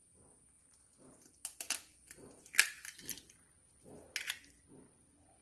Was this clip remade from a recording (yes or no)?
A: no